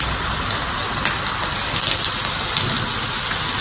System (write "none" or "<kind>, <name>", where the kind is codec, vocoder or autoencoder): none